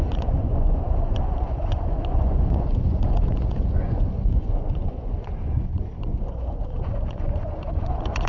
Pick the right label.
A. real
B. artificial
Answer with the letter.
B